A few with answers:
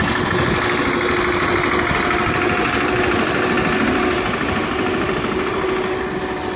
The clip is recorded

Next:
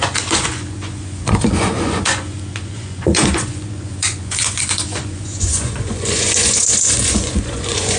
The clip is remade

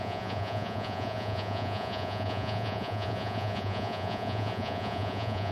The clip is remade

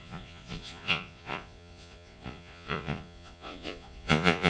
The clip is remade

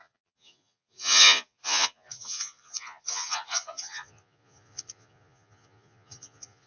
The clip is remade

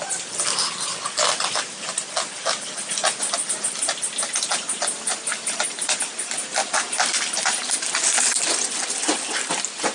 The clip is recorded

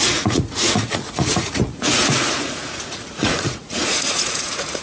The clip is remade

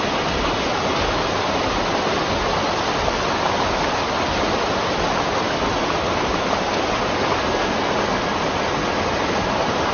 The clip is recorded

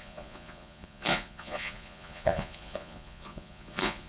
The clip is remade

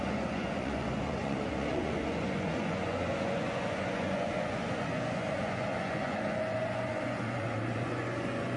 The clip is remade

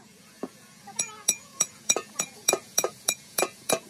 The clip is remade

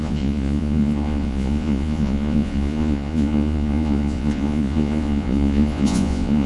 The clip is remade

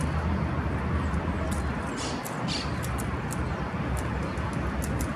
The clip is recorded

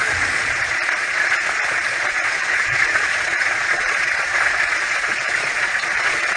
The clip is remade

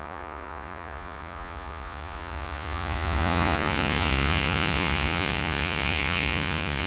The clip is remade